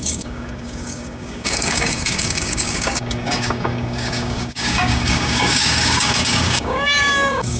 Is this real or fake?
fake